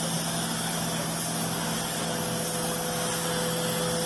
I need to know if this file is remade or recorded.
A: recorded